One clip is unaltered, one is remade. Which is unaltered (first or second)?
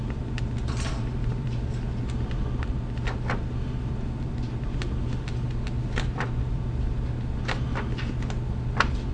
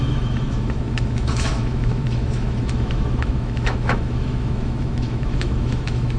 first